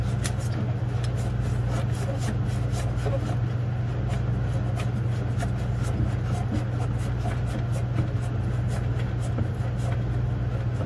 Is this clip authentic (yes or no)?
yes